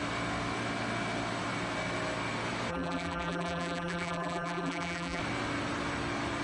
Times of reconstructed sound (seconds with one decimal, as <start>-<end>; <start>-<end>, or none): 2.7-5.2